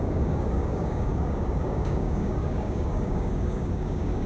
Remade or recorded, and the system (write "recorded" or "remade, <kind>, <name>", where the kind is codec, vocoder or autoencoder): remade, codec, DAC